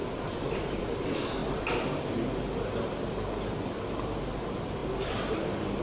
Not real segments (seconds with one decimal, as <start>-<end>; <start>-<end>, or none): 0.0-0.8